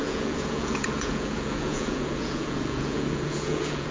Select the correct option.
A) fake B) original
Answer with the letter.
A